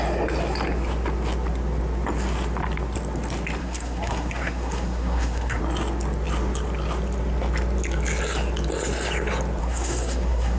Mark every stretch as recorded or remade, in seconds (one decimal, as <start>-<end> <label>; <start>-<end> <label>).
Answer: 0.0-3.6 recorded; 3.6-5.6 remade; 5.6-9.6 recorded; 9.6-10.6 remade